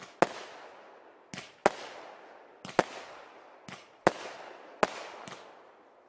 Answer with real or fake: real